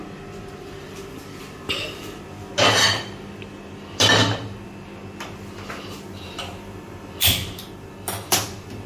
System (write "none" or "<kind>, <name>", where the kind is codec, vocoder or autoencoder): none